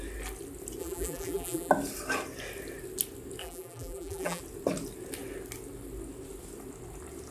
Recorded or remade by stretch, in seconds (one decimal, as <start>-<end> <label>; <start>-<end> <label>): 0.0-0.8 recorded; 0.8-1.7 remade; 1.7-3.4 recorded; 3.4-4.4 remade; 4.4-7.3 recorded